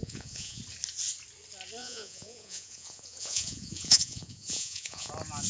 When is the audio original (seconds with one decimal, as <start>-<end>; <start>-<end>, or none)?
0.6-1.8; 5.1-5.5